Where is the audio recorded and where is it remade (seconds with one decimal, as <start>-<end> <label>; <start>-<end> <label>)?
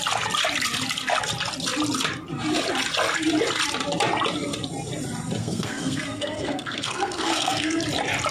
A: 0.0-5.4 recorded; 5.4-7.8 remade; 7.8-8.3 recorded